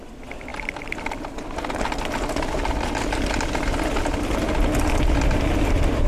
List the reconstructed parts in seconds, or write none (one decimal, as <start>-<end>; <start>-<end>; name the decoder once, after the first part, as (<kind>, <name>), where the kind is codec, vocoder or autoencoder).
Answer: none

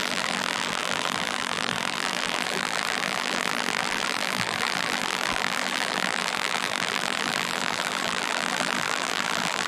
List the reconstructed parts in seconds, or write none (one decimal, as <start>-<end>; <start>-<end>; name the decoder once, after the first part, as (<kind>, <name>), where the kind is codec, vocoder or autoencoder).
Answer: 0.0-9.7 (vocoder, BigVGAN v2)

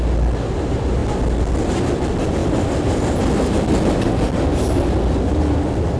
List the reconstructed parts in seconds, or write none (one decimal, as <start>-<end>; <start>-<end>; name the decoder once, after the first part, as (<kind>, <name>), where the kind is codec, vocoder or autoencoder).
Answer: none

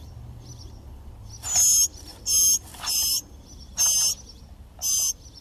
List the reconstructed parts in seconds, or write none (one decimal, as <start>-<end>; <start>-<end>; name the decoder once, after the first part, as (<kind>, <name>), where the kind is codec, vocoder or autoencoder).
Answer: 0.0-1.1 (vocoder, BigVGAN v2)

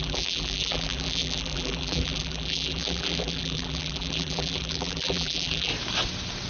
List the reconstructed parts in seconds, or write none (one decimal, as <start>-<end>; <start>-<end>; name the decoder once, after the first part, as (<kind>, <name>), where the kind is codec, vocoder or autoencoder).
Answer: 0.0-5.7 (vocoder, BigVGAN v2)

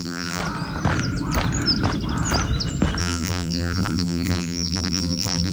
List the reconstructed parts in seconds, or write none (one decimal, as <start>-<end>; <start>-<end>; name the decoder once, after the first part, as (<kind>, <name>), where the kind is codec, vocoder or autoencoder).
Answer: 0.0-0.4 (vocoder, BigVGAN v2); 3.0-5.5